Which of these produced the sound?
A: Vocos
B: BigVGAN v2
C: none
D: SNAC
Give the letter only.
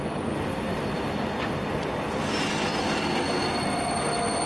C